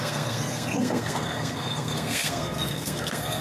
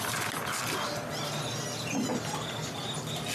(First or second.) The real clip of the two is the second